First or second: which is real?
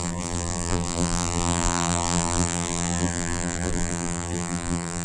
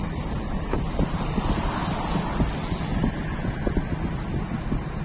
second